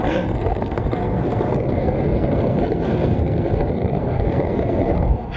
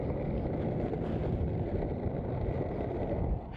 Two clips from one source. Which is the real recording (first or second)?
second